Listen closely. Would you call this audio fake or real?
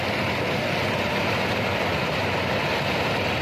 real